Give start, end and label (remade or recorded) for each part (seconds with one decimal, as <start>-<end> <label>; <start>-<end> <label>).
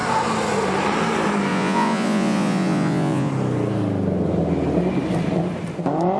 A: 0.0-1.5 recorded; 1.5-3.3 remade; 3.3-6.2 recorded